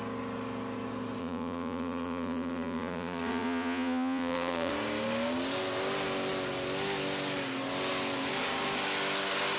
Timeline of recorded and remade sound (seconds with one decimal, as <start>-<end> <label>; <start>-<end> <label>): 0.0-1.2 recorded; 1.2-4.7 remade; 4.7-9.6 recorded